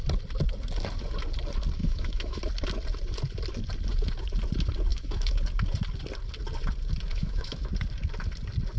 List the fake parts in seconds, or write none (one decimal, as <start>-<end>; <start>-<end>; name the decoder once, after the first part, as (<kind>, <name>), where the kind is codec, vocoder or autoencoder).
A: 1.8-2.4 (autoencoder, DAC-VAE); 4.9-5.4; 7.1-7.7